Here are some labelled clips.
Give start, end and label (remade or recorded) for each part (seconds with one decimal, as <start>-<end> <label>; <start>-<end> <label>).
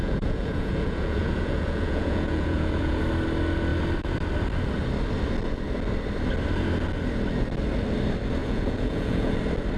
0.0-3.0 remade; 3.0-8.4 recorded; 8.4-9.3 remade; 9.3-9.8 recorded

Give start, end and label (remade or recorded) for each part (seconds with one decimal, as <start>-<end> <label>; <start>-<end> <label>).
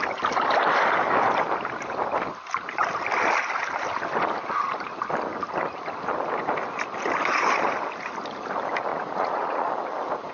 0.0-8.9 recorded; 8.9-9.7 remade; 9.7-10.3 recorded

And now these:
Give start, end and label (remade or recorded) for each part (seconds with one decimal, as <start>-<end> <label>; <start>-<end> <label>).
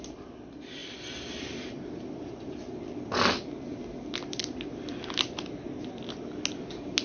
0.0-7.0 recorded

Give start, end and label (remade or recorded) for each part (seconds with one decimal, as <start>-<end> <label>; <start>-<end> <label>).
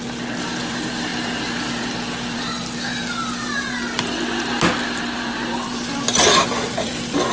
0.0-7.3 recorded